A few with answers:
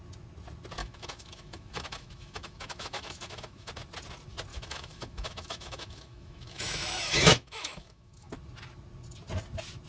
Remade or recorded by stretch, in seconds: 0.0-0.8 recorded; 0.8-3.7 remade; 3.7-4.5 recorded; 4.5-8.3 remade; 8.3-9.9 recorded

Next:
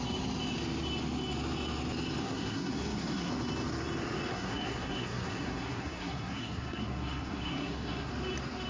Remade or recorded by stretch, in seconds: 0.0-2.2 recorded; 2.2-3.3 remade; 3.3-4.3 recorded; 4.3-8.1 remade; 8.1-8.7 recorded

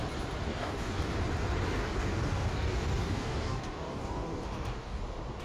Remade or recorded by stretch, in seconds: 0.0-0.5 recorded; 0.5-1.1 remade; 1.1-1.8 recorded; 1.8-5.0 remade; 5.0-5.4 recorded

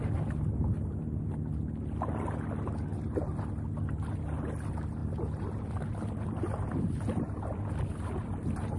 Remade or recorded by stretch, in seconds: 0.0-8.8 recorded

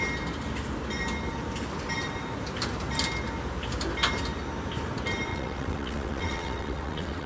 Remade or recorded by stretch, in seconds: 0.0-5.3 recorded; 5.3-7.3 remade